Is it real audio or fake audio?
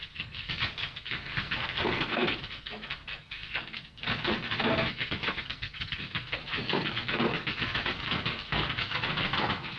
fake